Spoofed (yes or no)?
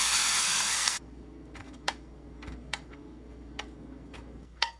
yes